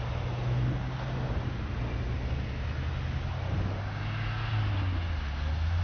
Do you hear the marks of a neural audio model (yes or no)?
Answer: no